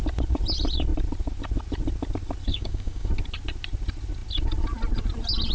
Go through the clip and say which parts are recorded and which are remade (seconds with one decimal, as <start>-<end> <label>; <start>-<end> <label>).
0.0-2.5 recorded; 2.5-3.1 remade; 3.1-5.5 recorded